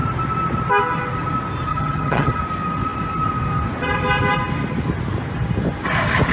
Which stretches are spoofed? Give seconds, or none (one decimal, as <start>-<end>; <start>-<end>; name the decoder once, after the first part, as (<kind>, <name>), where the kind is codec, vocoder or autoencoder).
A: 1.7-2.4 (vocoder, HiFi-GAN)